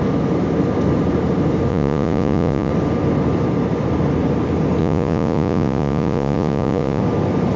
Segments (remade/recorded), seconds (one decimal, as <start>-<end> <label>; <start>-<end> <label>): 0.0-1.7 recorded; 1.7-2.7 remade; 2.7-4.8 recorded; 4.8-7.0 remade; 7.0-7.6 recorded

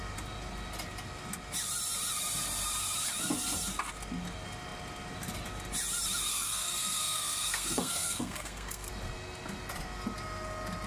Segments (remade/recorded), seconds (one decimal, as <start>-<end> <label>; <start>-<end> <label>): 0.0-6.3 recorded; 6.3-8.9 remade; 8.9-10.9 recorded

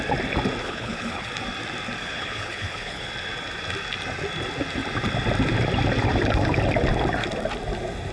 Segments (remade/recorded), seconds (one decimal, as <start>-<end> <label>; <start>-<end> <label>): 0.0-0.6 recorded; 0.6-1.3 remade; 1.3-2.0 recorded; 2.0-3.1 remade; 3.1-8.1 recorded

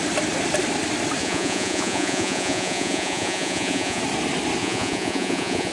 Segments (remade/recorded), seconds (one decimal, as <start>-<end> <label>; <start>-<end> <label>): 0.0-1.2 recorded; 1.2-4.0 remade; 4.0-4.6 recorded; 4.6-5.7 remade

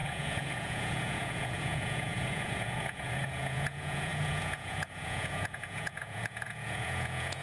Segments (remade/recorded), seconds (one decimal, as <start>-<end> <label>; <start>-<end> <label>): 0.0-7.4 remade

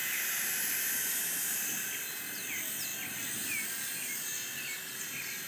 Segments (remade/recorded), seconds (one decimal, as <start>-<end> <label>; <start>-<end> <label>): 0.0-1.4 remade; 1.4-5.5 recorded